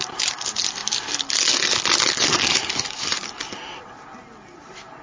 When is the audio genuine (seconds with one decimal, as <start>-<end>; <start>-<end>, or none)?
0.0-5.0